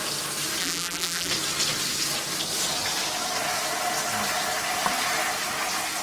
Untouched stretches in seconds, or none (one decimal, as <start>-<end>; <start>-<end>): 0.0-0.6; 1.3-6.0